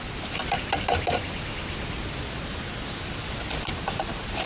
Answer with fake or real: real